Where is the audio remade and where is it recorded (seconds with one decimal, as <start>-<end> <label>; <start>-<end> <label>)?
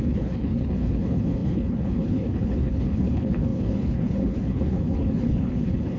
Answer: 0.0-6.0 remade